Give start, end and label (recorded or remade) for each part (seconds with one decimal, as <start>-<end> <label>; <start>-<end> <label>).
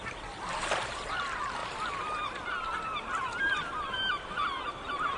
0.0-5.2 remade